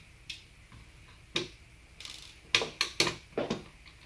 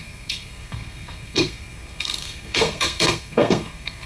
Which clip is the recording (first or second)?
first